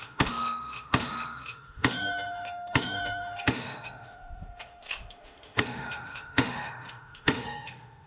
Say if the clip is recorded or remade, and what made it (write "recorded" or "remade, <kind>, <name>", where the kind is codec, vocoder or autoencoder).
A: remade, autoencoder, DAC-VAE